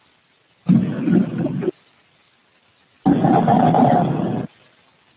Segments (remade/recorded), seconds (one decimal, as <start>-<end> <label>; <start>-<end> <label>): 0.0-5.2 recorded